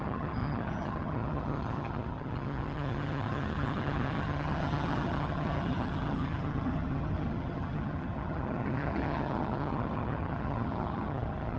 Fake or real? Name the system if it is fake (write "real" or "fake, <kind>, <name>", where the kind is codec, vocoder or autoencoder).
fake, vocoder, HiFi-GAN